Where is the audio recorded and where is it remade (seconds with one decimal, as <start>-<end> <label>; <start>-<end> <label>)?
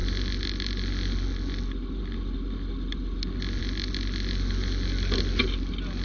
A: 0.0-6.0 recorded